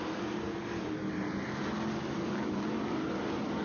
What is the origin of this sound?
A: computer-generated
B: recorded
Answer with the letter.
B